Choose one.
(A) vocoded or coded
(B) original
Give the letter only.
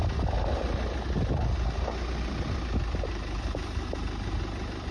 B